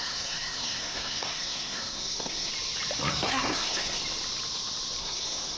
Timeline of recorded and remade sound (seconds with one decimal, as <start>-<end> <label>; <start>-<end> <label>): 0.0-2.5 remade; 2.5-3.1 recorded; 3.1-4.0 remade; 4.0-5.0 recorded; 5.0-5.6 remade